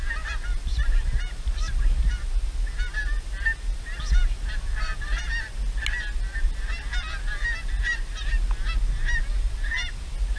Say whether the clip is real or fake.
real